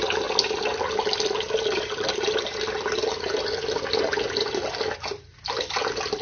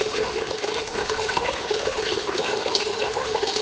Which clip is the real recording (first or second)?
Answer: first